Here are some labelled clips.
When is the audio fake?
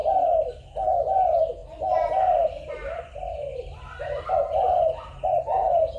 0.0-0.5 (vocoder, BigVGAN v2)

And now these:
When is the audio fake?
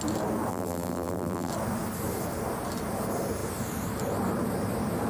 0.5-1.5 (vocoder, BigVGAN v2)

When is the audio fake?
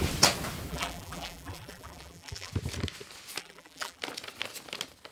0.7-2.5 (vocoder, BigVGAN v2); 3.4-4.0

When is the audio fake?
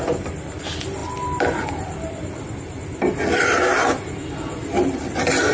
0.0-5.5 (vocoder, BigVGAN v2)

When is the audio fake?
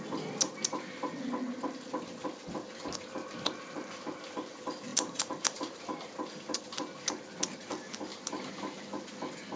4.9-5.8 (vocoder, BigVGAN v2)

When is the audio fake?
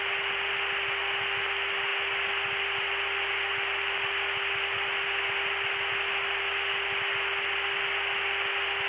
none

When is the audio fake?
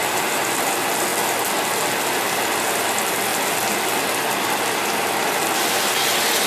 none